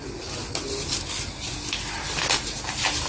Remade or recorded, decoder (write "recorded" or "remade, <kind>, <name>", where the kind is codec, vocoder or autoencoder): recorded